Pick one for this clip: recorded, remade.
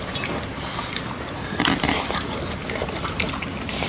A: recorded